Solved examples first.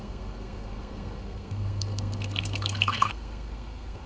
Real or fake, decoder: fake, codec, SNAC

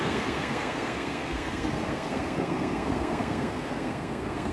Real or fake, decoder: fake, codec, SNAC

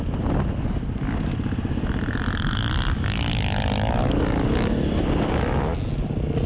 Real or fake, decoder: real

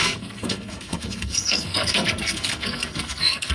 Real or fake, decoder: fake, codec, SNAC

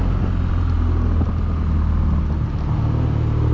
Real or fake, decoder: real